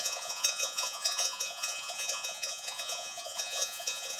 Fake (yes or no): yes